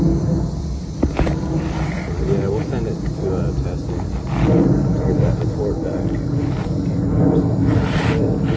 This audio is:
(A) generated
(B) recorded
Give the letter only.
B